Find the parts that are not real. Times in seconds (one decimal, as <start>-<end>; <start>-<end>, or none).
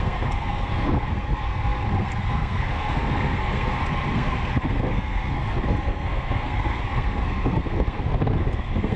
0.0-9.0